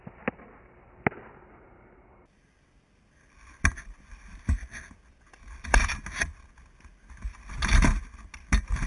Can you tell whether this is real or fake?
real